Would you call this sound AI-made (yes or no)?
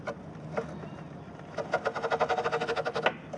no